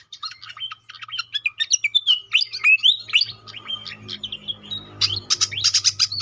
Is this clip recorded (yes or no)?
yes